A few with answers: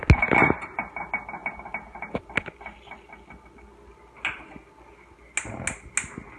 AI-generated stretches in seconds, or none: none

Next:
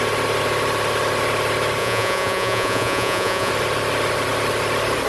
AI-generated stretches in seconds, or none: 1.8-3.5 (vocoder, Vocos)

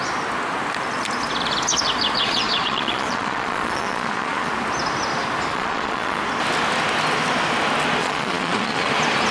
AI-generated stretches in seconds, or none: 2.2-4.5 (vocoder, Vocos); 5.5-6.2; 8.0-8.9